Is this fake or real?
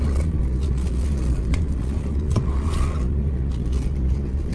fake